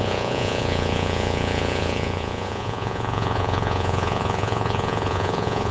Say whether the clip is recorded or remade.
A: remade